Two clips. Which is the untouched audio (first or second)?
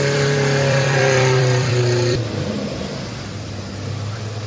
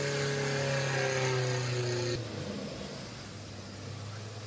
second